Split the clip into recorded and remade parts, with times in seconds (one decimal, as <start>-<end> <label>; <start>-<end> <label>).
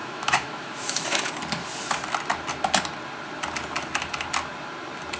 0.0-1.3 remade; 1.3-5.2 recorded